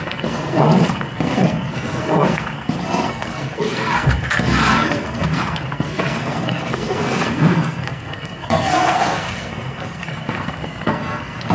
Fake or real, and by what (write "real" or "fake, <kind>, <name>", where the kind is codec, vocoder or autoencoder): fake, codec, SNAC